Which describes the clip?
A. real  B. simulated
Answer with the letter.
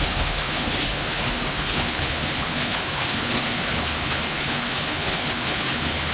B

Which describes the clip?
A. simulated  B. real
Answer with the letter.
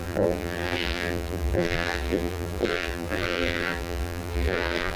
A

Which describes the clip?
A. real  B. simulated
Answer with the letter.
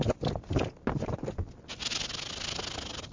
A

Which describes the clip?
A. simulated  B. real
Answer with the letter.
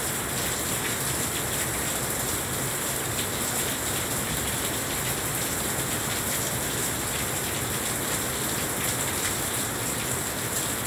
B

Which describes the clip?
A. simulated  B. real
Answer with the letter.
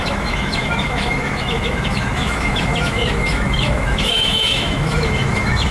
A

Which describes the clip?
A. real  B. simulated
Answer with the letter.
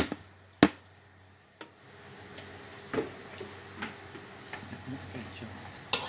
A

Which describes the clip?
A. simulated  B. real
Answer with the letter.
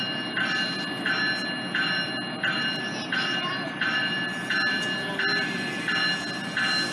B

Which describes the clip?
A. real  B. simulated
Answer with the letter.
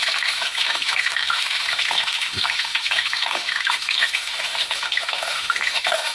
B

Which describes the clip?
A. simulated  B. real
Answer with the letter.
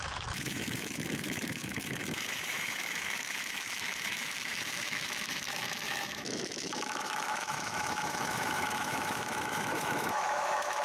A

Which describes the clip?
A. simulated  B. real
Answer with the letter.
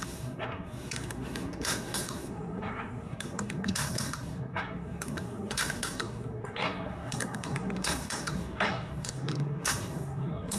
A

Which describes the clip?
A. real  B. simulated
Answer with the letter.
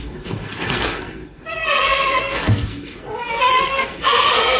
B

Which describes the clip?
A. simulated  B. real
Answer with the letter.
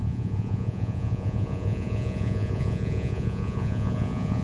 A